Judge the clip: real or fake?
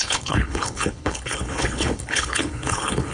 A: fake